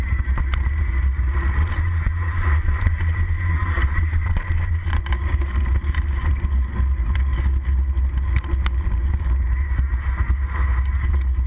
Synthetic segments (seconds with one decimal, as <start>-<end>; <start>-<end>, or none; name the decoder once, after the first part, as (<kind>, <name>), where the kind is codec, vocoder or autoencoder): 1.6-5.0 (vocoder, Vocos)